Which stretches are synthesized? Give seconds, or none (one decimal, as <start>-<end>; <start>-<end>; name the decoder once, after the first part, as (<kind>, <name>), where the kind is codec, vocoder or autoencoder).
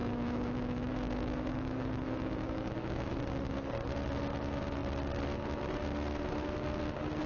0.0-3.1 (autoencoder, DAC-VAE)